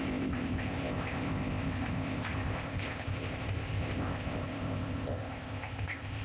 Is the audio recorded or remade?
remade